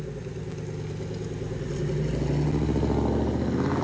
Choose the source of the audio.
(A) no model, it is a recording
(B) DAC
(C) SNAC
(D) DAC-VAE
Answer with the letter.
A